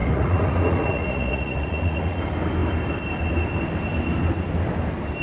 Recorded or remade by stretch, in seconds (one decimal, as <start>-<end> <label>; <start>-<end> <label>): 0.0-2.2 remade; 2.2-5.2 recorded